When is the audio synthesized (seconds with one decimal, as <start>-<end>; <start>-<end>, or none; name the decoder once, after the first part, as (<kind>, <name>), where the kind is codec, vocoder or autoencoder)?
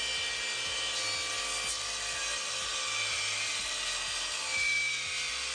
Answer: none